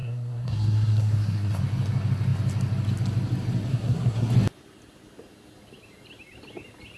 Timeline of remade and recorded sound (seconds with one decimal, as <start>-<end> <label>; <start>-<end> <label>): 0.0-1.6 remade; 1.6-3.7 recorded; 3.7-4.3 remade; 4.3-7.0 recorded